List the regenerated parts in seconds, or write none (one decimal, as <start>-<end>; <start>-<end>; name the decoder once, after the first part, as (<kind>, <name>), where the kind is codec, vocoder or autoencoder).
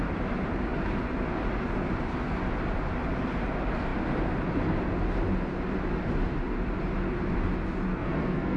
7.9-8.6 (codec, SNAC)